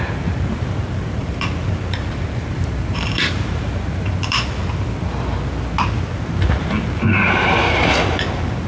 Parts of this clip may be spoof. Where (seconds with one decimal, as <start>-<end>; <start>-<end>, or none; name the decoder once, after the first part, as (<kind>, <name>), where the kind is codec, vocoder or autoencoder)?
0.0-4.6 (vocoder, BigVGAN v2); 6.1-8.7